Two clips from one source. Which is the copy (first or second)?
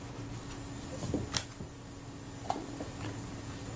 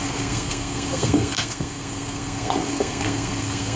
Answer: second